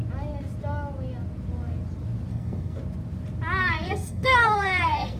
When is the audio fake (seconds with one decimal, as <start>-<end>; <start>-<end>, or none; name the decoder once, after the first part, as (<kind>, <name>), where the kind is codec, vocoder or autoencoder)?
2.3-2.8 (codec, SNAC); 3.6-5.2